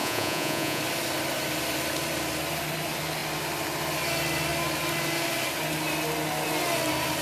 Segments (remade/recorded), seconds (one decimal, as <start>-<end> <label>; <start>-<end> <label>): 0.0-0.8 remade; 0.8-7.2 recorded